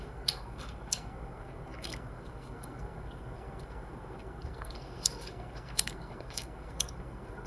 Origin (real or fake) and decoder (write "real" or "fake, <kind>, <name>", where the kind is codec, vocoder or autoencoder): fake, codec, SNAC